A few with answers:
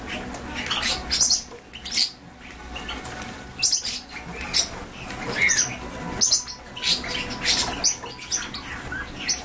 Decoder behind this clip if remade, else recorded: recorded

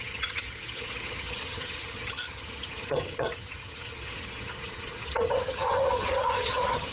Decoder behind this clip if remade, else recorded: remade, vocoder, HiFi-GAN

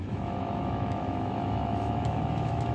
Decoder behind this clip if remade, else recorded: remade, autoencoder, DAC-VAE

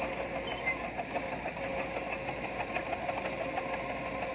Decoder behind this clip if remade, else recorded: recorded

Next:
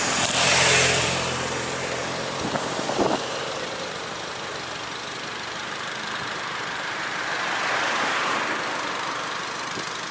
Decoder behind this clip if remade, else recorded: remade, vocoder, BigVGAN v2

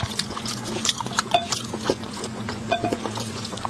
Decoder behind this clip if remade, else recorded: remade, vocoder, Vocos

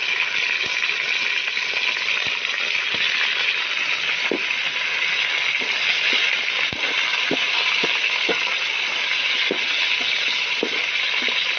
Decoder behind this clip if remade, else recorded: recorded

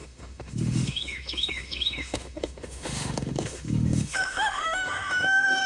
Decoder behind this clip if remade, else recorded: remade, autoencoder, DAC-VAE